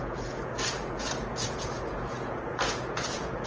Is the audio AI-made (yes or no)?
yes